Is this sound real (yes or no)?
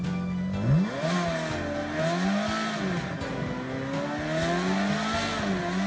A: yes